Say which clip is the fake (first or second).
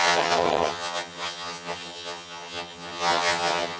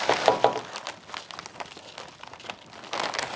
first